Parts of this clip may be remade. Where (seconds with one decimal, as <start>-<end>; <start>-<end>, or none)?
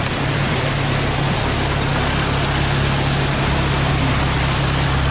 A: 0.0-0.6